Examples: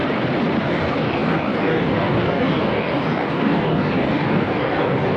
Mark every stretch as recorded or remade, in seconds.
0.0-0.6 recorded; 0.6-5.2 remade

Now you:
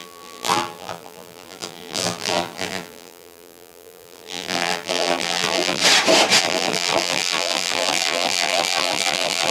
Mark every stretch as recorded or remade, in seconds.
0.0-5.8 remade; 5.8-6.4 recorded; 6.4-9.5 remade

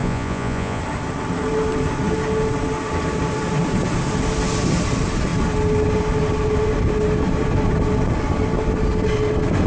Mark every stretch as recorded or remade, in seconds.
0.0-0.8 remade; 0.8-9.7 recorded

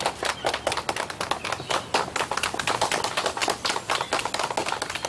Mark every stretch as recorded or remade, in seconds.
0.0-5.1 recorded

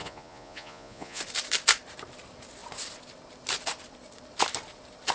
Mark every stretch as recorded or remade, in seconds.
0.0-1.2 remade; 1.2-5.1 recorded